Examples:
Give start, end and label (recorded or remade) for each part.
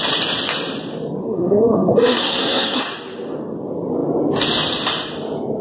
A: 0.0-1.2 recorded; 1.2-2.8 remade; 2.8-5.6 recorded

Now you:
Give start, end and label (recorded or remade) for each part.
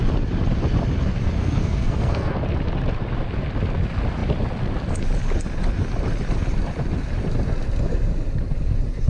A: 0.0-1.4 recorded; 1.4-2.4 remade; 2.4-9.1 recorded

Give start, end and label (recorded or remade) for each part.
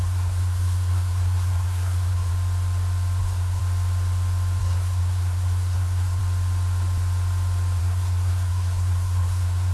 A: 0.0-2.3 remade; 2.3-3.2 recorded; 3.2-3.6 remade; 3.6-4.6 recorded; 4.6-6.2 remade; 6.2-7.8 recorded; 7.8-9.7 remade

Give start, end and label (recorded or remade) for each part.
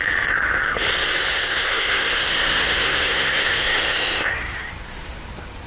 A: 0.0-1.3 recorded; 1.3-4.7 remade; 4.7-5.7 recorded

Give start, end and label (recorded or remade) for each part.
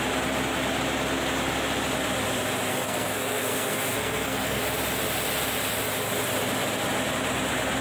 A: 0.0-2.7 recorded; 2.7-4.6 remade; 4.6-7.8 recorded